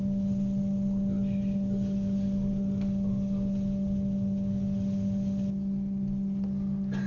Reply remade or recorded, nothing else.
recorded